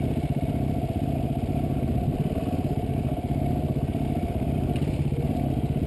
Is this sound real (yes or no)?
yes